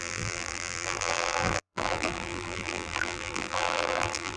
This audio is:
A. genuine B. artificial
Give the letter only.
B